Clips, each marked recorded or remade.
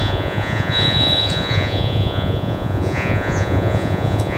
remade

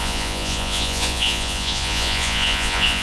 remade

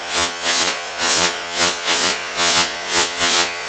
remade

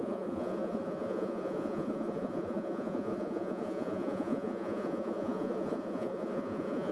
remade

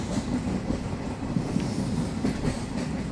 recorded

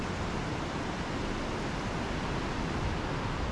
recorded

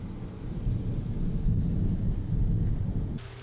recorded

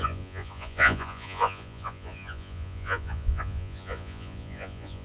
remade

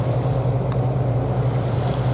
recorded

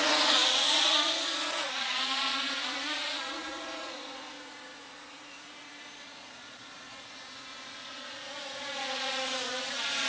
remade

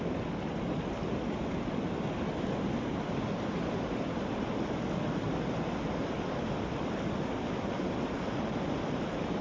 recorded